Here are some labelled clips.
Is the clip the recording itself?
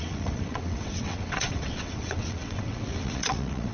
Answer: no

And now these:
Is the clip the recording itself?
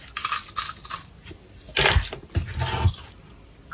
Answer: yes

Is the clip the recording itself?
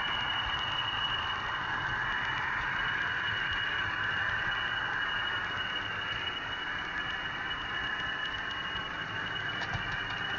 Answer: yes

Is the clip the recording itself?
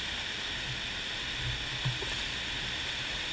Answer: yes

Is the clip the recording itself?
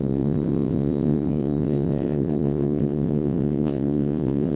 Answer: no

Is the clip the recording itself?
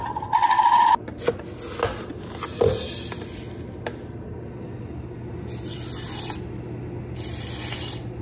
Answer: yes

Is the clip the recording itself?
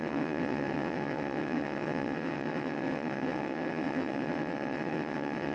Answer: no